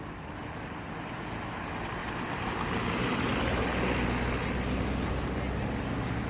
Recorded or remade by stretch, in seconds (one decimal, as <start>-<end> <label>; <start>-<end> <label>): 0.0-6.3 recorded